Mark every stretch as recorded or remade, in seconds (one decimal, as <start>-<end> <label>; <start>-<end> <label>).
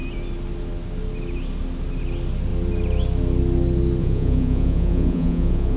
0.0-4.0 recorded; 4.0-5.8 remade